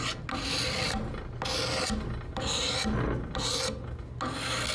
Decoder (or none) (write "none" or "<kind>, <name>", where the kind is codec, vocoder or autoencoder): none